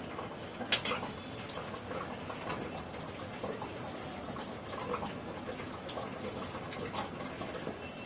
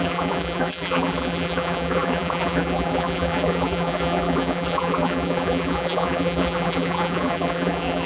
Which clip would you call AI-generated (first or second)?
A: second